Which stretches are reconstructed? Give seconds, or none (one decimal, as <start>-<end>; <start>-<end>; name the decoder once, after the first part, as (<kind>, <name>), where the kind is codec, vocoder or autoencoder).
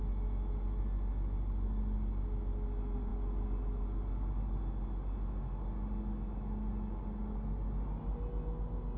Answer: none